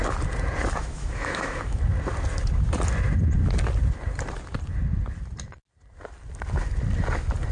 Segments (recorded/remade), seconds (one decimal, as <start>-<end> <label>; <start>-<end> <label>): 0.0-0.8 recorded; 0.8-1.8 remade; 1.8-7.5 recorded